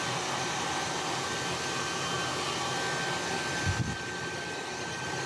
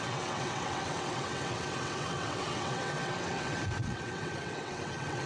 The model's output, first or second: second